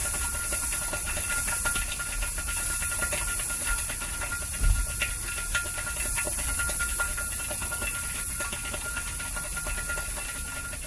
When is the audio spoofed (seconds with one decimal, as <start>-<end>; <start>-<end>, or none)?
none